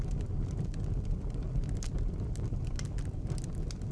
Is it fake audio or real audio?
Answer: real